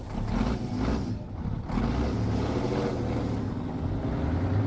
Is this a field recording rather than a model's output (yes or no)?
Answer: yes